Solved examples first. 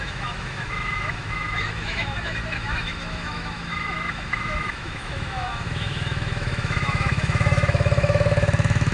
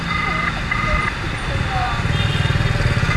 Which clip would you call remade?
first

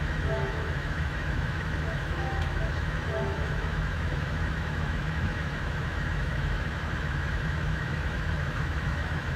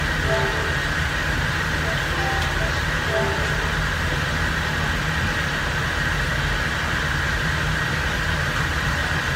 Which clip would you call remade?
first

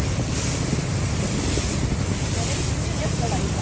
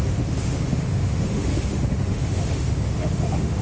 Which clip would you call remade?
second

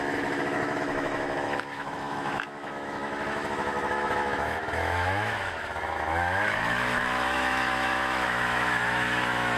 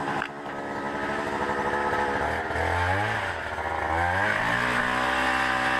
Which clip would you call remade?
first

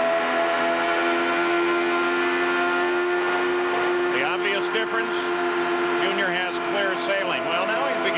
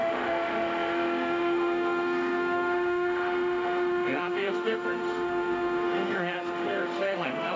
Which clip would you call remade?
second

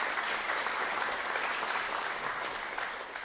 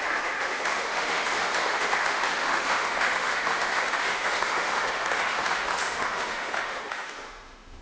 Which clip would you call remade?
second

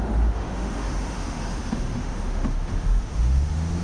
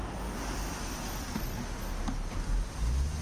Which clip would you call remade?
first